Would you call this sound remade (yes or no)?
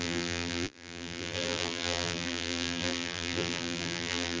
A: yes